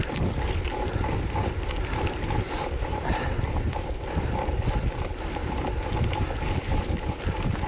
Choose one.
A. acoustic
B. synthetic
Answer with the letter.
B